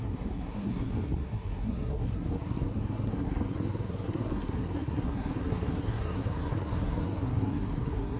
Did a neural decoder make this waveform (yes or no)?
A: yes